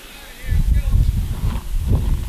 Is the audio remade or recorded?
recorded